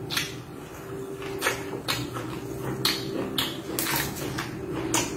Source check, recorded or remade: recorded